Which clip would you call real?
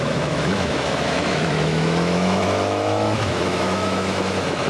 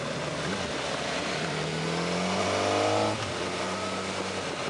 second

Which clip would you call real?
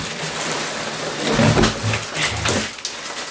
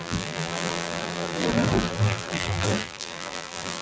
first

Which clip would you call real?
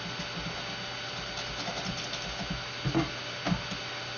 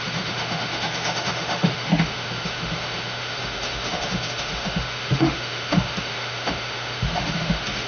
first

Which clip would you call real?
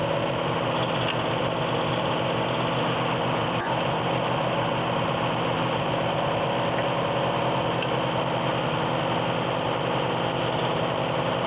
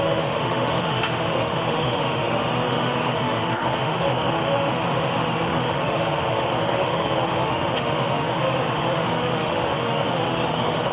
first